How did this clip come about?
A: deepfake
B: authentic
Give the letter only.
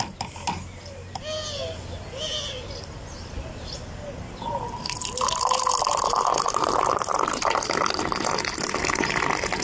B